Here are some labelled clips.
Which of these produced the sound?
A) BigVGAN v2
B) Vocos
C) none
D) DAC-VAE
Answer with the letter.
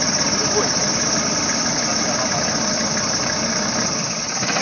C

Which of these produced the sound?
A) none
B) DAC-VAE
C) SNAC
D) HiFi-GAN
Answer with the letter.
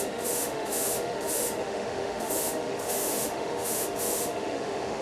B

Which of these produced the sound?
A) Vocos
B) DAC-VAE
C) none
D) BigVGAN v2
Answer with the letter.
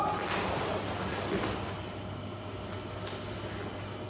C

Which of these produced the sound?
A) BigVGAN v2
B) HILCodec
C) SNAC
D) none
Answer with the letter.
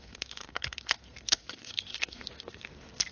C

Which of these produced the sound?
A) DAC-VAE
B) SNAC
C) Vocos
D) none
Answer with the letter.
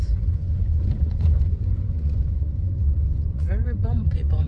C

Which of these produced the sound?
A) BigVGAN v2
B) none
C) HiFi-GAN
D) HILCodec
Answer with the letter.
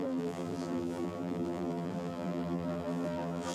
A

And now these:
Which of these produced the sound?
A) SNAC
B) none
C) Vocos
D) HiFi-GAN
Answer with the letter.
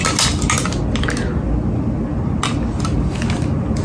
B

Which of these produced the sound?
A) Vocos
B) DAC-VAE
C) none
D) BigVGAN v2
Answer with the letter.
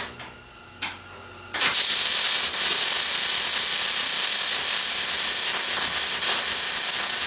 C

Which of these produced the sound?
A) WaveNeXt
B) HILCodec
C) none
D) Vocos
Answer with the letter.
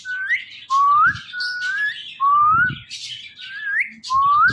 C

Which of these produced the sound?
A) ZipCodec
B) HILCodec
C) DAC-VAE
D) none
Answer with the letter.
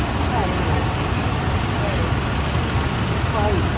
D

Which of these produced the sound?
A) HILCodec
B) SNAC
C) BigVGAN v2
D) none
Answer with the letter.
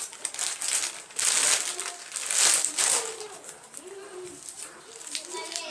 D